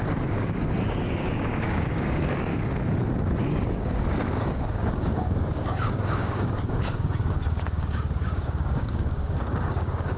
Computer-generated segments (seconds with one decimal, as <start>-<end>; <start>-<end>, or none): 0.0-2.5; 3.4-10.2